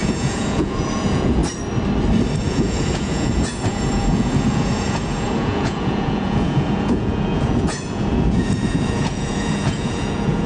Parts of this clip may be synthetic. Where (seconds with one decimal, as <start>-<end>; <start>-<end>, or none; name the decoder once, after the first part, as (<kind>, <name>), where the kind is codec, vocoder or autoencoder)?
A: 0.0-1.4 (vocoder, Vocos); 2.4-10.5